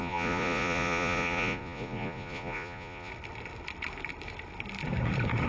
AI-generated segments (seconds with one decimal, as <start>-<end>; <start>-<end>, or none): 0.0-3.1